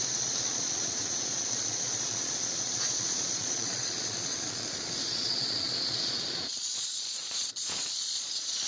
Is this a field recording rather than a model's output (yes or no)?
no